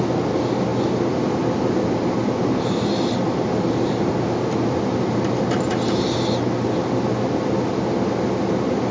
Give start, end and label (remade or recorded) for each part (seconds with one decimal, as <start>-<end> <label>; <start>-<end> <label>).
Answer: 0.0-8.9 recorded